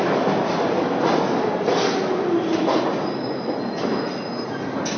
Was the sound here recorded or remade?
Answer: recorded